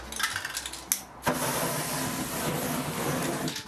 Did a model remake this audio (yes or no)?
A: no